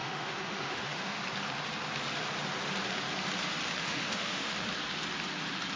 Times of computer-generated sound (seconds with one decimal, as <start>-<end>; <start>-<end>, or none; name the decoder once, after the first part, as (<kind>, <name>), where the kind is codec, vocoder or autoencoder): 0.0-1.2 (autoencoder, DAC-VAE); 3.8-4.5